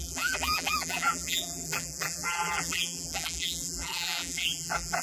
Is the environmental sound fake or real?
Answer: fake